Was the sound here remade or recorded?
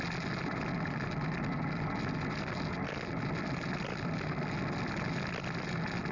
recorded